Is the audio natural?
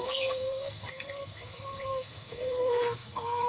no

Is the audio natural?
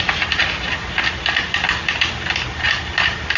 yes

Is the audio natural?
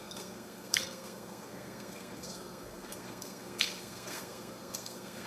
no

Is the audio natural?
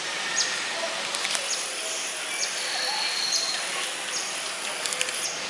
yes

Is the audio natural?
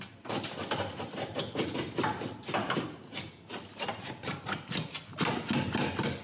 yes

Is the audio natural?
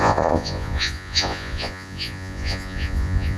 no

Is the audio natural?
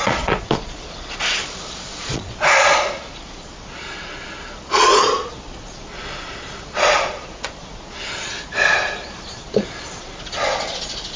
no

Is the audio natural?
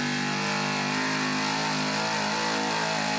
yes